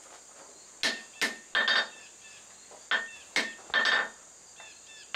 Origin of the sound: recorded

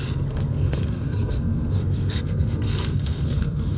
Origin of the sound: remade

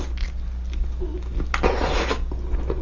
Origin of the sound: recorded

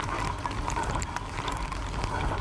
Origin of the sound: recorded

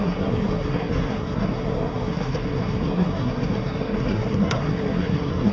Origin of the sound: remade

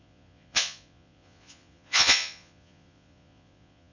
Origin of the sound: remade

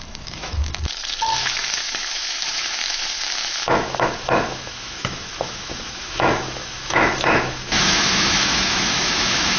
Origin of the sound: remade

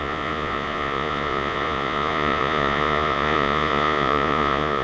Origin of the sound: remade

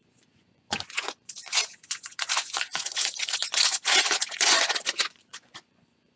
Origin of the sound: remade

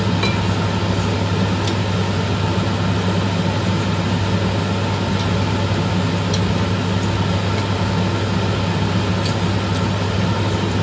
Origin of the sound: recorded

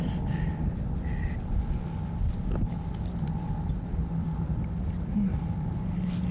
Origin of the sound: recorded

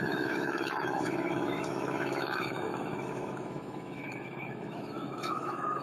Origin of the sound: remade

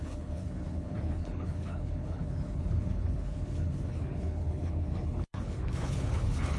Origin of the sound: remade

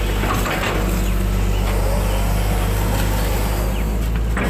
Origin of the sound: recorded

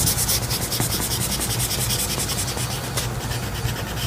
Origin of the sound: recorded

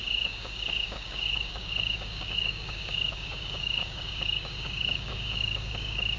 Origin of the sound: remade